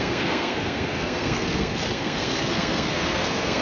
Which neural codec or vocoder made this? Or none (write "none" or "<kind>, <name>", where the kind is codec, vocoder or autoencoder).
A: codec, SNAC